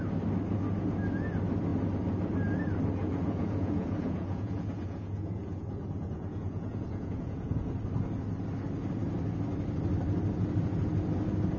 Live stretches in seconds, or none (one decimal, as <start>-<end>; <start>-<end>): 0.0-3.0; 7.8-11.6